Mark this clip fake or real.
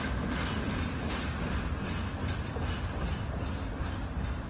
real